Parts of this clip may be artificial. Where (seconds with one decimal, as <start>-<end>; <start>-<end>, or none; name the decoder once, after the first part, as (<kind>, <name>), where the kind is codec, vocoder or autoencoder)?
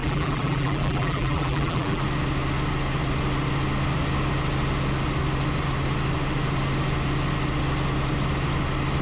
0.0-2.0 (vocoder, BigVGAN v2)